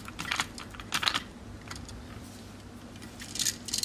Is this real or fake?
real